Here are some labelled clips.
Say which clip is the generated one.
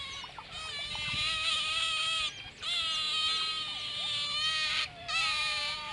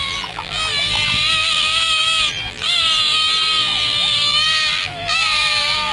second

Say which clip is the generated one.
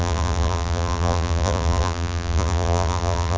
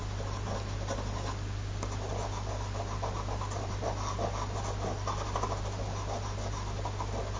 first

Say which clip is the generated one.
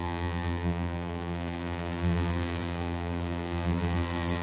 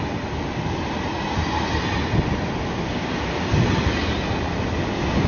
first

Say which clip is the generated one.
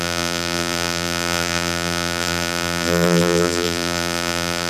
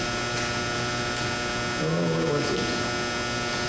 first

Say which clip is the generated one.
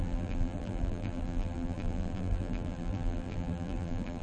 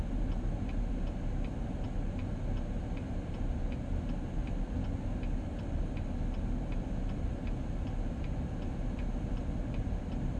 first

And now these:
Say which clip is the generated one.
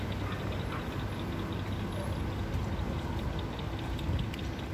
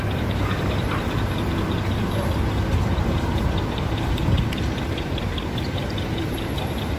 second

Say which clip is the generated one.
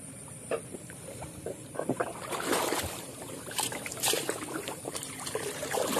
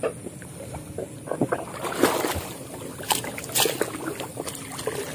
first